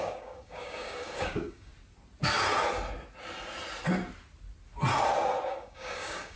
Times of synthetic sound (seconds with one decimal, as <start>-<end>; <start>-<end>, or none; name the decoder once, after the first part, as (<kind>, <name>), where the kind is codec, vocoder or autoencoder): 0.0-1.7 (codec, DAC); 5.5-6.4